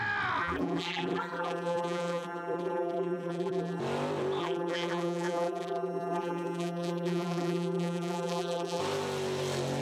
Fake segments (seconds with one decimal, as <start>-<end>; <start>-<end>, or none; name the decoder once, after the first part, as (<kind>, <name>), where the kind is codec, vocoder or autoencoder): 0.4-3.8 (vocoder, BigVGAN v2); 4.4-8.8